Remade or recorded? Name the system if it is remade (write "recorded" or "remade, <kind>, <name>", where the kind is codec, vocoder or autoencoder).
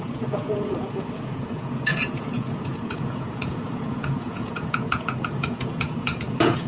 remade, vocoder, Vocos